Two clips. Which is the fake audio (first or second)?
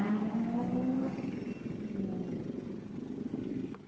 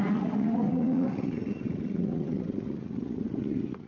second